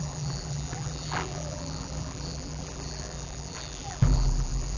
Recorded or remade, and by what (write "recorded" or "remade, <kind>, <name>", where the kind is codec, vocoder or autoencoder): remade, vocoder, BigVGAN v2